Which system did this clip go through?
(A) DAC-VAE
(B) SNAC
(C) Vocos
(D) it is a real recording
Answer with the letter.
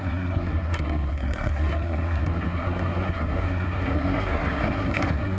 B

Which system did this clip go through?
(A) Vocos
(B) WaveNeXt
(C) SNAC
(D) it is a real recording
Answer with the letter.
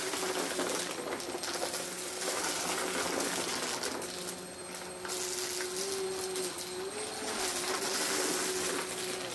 D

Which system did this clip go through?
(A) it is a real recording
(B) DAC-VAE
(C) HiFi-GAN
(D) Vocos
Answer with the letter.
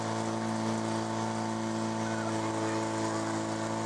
A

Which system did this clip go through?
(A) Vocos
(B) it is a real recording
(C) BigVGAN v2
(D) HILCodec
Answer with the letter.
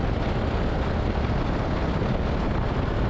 B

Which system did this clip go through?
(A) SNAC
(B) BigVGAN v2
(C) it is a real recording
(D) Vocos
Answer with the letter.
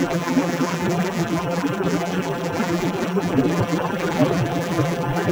B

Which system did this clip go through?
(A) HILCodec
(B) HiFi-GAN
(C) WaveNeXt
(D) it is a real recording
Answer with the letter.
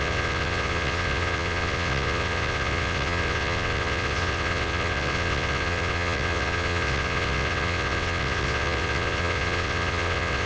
C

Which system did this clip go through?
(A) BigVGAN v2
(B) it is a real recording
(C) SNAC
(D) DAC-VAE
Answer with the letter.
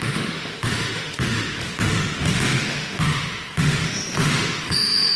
D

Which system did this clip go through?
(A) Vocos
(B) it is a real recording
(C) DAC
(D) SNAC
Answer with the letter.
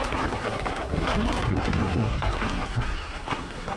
D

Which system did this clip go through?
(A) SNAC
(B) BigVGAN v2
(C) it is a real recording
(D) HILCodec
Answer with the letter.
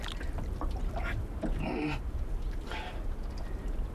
C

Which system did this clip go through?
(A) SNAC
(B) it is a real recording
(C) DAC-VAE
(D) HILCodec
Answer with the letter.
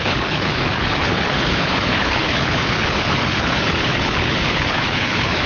D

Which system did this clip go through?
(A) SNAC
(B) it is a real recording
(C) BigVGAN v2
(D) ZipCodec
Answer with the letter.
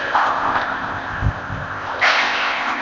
D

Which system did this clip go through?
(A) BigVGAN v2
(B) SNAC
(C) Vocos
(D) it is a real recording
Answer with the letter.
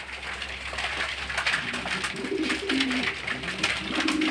D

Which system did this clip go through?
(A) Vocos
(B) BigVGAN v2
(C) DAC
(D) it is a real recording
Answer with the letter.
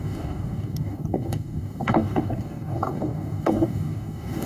C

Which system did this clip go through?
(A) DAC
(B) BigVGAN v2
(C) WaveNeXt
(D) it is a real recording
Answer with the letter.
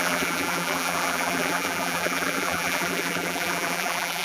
B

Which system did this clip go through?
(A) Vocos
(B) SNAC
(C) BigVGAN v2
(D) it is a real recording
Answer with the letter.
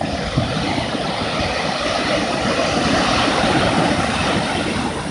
D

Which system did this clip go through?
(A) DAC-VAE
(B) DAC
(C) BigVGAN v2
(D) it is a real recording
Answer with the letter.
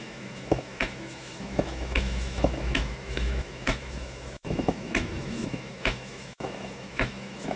A